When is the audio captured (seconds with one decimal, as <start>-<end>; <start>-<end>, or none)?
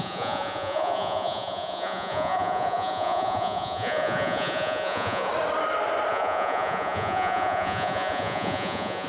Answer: 5.3-6.1